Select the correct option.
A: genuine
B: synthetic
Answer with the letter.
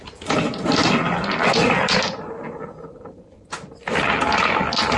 A